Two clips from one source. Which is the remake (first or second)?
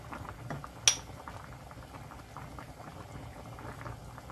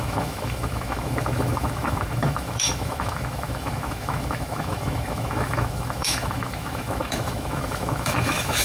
second